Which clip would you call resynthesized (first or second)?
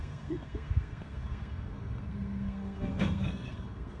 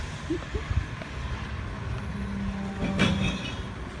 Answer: first